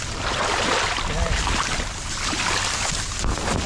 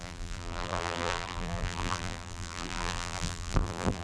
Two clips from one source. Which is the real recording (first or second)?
first